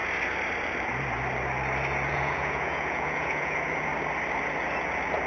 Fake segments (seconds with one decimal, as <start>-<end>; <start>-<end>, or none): 2.1-3.9